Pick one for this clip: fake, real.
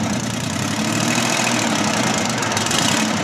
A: real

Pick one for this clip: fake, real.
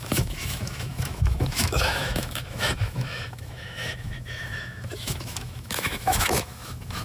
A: fake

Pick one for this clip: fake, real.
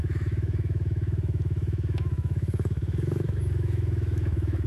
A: fake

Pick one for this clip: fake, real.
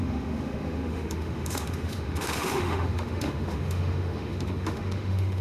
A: fake